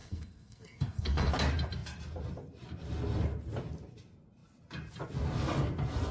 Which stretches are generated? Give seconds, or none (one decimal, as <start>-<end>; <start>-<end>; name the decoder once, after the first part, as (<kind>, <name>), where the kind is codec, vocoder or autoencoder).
0.0-1.3 (codec, SNAC)